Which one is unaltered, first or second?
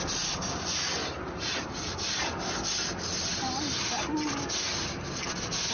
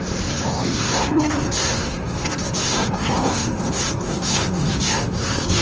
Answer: first